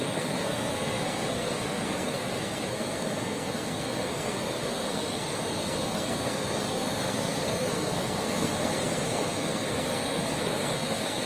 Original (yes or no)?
no